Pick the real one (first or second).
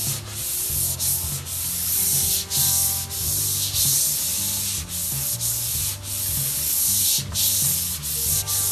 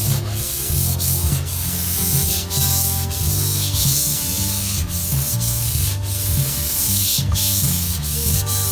first